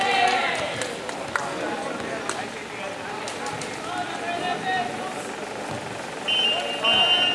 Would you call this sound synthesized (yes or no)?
no